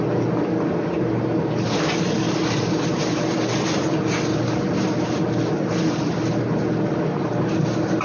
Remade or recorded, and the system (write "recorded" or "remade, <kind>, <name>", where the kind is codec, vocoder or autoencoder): recorded